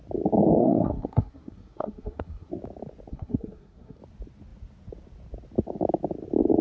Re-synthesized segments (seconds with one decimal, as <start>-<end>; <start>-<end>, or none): 0.6-2.5; 3.1-4.0